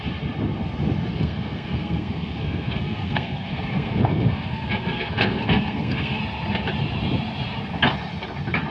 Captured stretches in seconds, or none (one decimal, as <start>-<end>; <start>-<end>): 0.0-1.1; 6.2-8.7